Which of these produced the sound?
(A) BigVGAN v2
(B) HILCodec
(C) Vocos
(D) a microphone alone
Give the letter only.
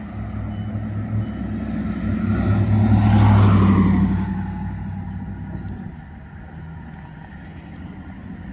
D